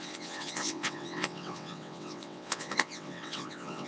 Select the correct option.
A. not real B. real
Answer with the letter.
A